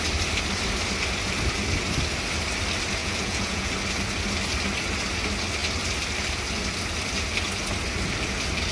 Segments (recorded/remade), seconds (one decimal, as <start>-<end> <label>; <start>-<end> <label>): 0.0-3.0 recorded; 3.0-3.7 remade; 3.7-8.7 recorded

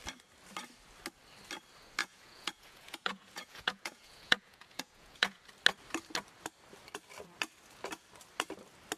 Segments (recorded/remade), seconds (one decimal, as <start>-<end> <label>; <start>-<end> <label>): 0.0-2.0 recorded; 2.0-5.4 remade; 5.4-9.0 recorded

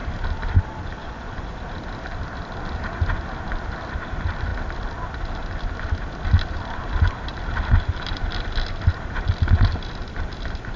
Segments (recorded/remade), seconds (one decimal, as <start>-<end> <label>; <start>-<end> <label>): 0.0-1.0 recorded; 1.0-1.6 remade; 1.6-10.8 recorded

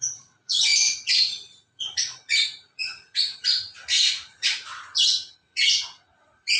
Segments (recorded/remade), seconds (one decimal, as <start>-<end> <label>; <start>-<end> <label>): 0.0-6.6 remade